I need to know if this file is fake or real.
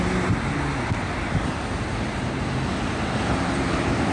real